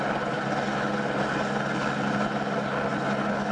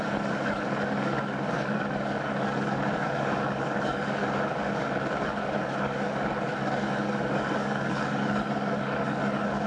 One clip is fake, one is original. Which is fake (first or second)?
second